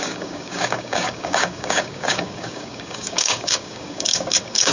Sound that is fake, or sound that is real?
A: fake